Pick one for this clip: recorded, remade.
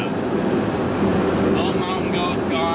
recorded